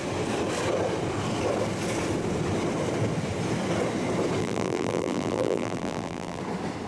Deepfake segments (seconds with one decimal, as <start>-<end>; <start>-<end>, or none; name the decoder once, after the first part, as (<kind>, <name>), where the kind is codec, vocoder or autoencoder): 4.4-6.4 (vocoder, BigVGAN v2)